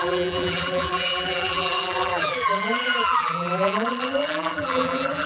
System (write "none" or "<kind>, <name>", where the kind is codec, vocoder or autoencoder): vocoder, BigVGAN v2